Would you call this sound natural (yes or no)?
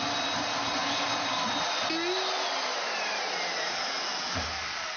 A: yes